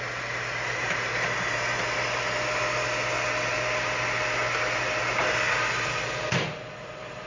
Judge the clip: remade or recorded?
recorded